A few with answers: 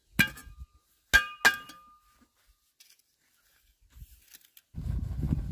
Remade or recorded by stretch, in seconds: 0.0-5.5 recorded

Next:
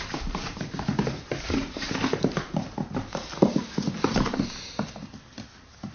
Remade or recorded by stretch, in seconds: 0.0-5.9 recorded